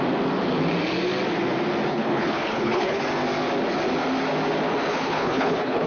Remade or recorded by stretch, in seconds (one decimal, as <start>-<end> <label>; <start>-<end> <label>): 0.0-1.9 recorded; 1.9-3.0 remade; 3.0-4.9 recorded; 4.9-5.9 remade

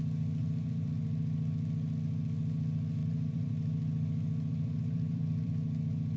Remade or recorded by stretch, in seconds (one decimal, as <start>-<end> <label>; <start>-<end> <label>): 0.0-0.4 recorded; 0.4-0.9 remade; 0.9-3.0 recorded; 3.0-3.5 remade; 3.5-4.5 recorded; 4.5-5.5 remade; 5.5-6.2 recorded

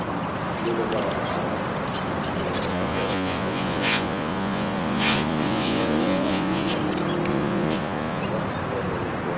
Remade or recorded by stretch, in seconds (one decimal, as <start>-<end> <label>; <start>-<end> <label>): 0.0-2.7 recorded; 2.7-6.7 remade; 6.7-7.3 recorded; 7.3-8.2 remade; 8.2-9.4 recorded

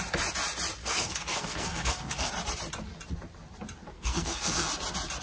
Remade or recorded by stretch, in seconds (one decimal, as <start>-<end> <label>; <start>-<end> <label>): 0.0-0.8 recorded; 0.8-2.3 remade; 2.3-3.8 recorded; 3.8-4.7 remade; 4.7-5.2 recorded

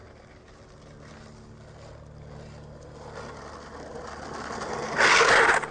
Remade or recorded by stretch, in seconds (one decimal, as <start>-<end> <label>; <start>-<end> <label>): 0.0-5.7 recorded

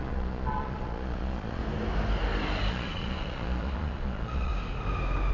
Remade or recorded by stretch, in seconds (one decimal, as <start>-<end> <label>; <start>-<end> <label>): 0.0-1.6 remade; 1.6-2.7 recorded; 2.7-4.5 remade; 4.5-5.3 recorded